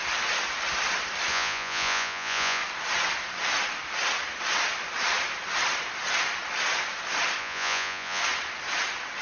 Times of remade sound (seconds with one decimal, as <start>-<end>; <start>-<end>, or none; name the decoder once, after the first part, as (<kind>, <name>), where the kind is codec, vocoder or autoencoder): 1.3-2.6 (vocoder, Vocos); 7.4-8.2